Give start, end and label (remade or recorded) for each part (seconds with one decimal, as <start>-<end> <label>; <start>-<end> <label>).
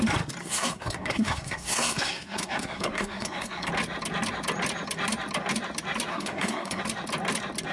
0.0-0.4 recorded; 0.4-3.7 remade; 3.7-6.1 recorded; 6.1-6.8 remade; 6.8-7.7 recorded